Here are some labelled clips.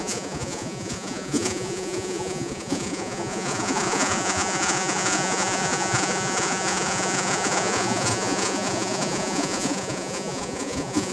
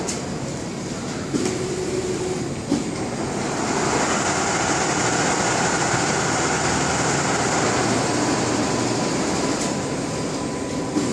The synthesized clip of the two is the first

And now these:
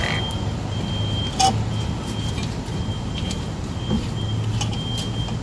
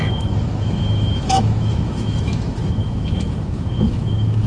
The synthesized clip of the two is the second